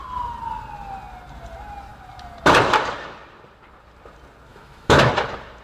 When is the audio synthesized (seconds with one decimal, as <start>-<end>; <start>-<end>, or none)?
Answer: 4.5-5.1